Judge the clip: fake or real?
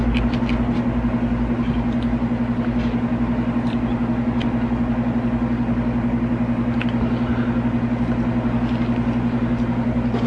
real